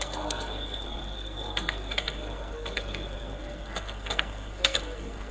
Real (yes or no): no